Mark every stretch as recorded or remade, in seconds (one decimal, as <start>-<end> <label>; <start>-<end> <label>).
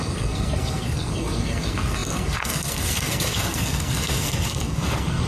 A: 0.0-5.3 remade